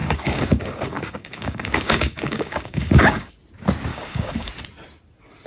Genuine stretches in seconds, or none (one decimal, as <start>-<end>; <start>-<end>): 3.3-3.9; 4.5-5.5